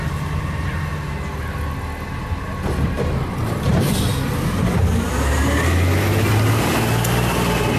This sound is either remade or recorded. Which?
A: recorded